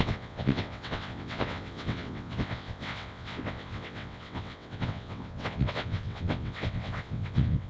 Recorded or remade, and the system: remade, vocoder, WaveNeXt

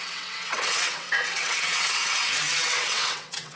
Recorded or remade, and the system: remade, vocoder, WaveNeXt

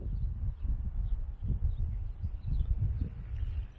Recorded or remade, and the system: recorded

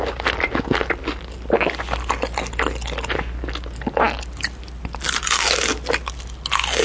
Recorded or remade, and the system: recorded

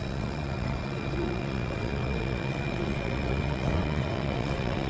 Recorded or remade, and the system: remade, vocoder, WaveNeXt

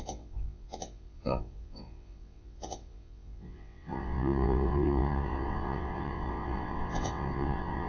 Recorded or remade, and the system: remade, vocoder, WaveNeXt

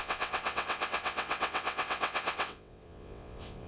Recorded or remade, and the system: remade, vocoder, WaveNeXt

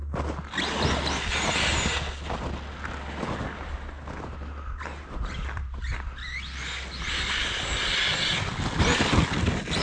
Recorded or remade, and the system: recorded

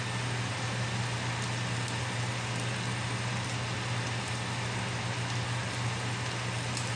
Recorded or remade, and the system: recorded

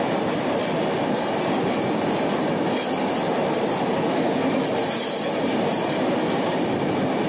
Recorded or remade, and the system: recorded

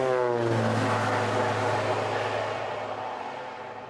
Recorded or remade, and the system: recorded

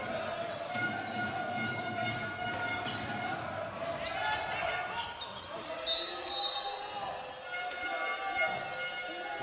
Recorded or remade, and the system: recorded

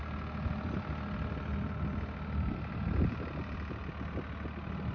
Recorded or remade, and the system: recorded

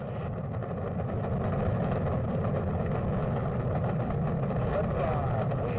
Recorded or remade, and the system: recorded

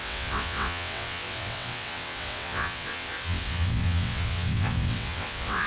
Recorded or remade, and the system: remade, vocoder, WaveNeXt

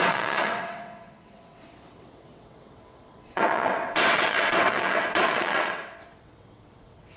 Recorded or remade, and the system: remade, vocoder, WaveNeXt